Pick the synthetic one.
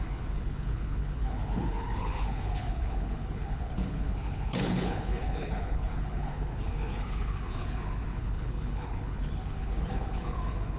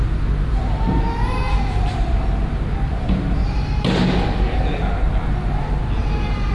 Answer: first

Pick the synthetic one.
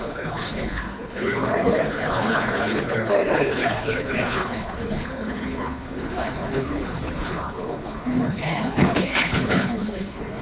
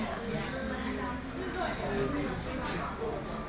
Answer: first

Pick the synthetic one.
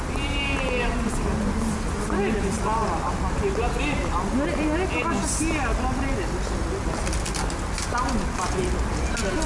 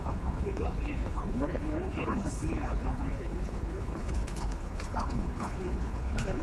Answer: second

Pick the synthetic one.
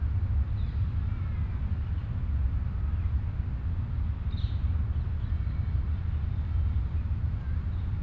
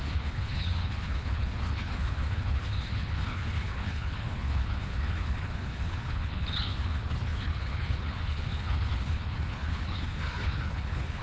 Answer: second